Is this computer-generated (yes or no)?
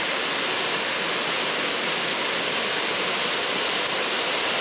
no